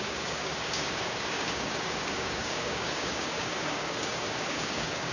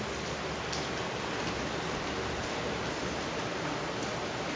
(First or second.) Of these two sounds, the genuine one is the second